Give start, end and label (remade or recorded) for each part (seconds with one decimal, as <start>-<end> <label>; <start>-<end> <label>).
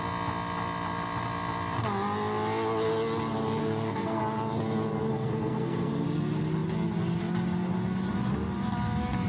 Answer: 0.0-3.6 recorded; 3.6-4.2 remade; 4.2-5.1 recorded; 5.1-5.9 remade; 5.9-9.3 recorded